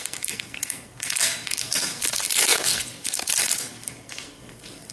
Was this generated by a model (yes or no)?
yes